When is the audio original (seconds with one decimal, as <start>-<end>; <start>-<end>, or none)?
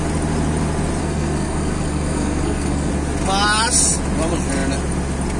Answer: 0.0-1.0; 2.9-5.4